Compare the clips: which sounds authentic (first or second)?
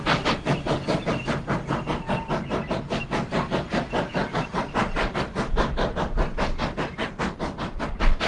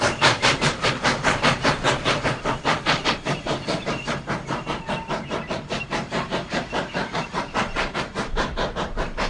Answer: first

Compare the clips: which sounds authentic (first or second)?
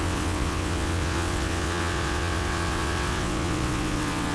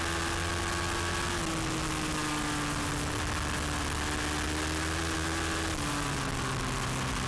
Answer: second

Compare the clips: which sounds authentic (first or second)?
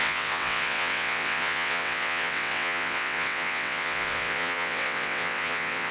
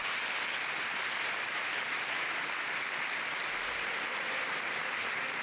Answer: second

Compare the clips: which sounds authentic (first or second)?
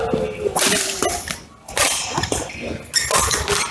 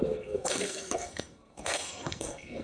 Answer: first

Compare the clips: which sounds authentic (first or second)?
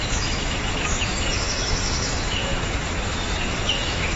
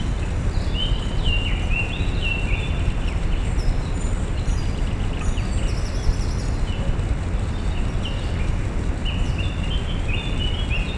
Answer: second